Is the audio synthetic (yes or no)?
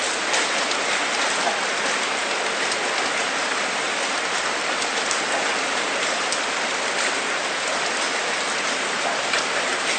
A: no